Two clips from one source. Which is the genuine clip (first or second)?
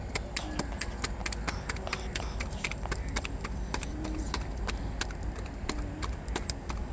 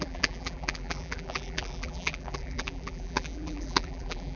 first